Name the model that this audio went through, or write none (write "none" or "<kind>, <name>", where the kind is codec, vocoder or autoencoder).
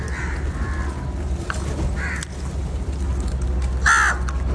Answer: none